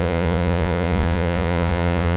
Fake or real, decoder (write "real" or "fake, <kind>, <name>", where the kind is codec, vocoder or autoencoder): fake, vocoder, Vocos